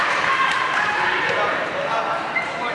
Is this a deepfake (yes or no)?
yes